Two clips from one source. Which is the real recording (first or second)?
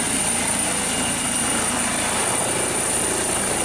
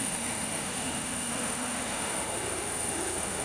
first